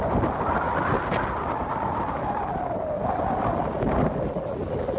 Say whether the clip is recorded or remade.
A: recorded